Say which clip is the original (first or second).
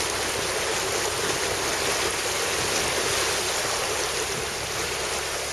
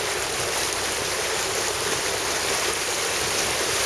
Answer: first